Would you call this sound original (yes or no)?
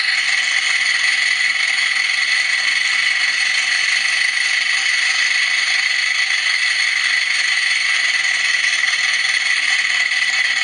yes